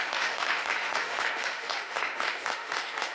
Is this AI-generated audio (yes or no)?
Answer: yes